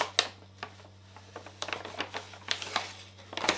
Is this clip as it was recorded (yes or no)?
yes